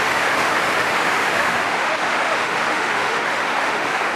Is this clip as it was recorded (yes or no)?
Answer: no